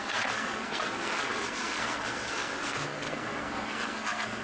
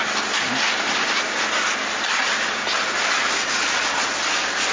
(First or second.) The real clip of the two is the second